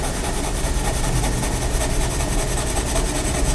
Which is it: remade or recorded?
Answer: recorded